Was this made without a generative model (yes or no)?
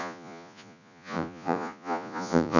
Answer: no